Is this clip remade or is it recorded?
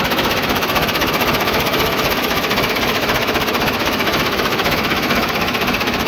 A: remade